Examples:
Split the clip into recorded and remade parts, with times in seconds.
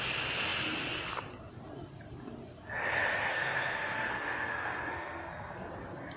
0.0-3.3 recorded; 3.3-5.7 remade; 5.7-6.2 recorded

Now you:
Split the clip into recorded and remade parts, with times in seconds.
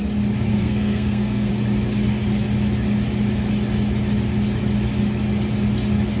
0.0-0.5 recorded; 0.5-1.5 remade; 1.5-6.2 recorded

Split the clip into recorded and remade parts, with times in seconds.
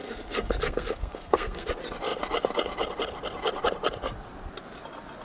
0.0-1.7 remade; 1.7-5.2 recorded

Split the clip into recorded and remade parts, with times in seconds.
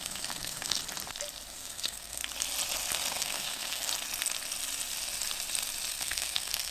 0.0-0.8 remade; 0.8-1.5 recorded; 1.5-2.2 remade; 2.2-3.1 recorded; 3.1-3.9 remade; 3.9-5.9 recorded; 5.9-6.7 remade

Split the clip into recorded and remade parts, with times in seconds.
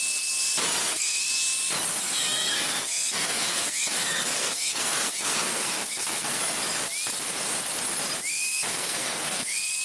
0.0-0.8 recorded; 0.8-1.3 remade; 1.3-1.9 recorded; 1.9-6.4 remade; 6.4-8.3 recorded; 8.3-9.8 remade